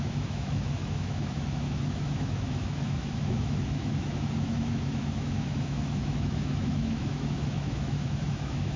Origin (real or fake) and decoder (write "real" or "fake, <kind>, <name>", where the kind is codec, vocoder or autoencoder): fake, autoencoder, DAC-VAE